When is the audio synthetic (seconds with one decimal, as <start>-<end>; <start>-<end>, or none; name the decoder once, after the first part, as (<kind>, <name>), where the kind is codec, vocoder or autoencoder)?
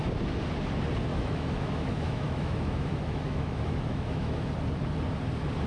1.1-4.5 (autoencoder, DAC-VAE)